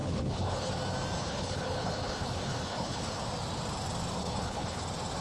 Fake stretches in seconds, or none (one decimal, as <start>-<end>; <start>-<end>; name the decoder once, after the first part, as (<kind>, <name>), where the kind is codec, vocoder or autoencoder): 0.0-0.7 (codec, HILCodec); 1.2-3.2; 4.2-4.8